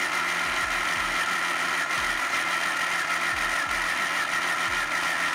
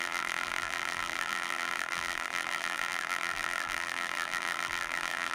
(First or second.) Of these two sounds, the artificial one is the second